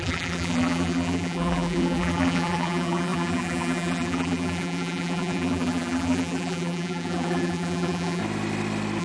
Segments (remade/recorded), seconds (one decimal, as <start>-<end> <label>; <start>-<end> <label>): 0.0-8.2 remade; 8.2-9.0 recorded